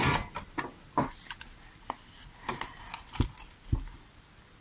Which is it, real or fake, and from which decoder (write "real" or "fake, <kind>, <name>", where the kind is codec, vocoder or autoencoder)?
real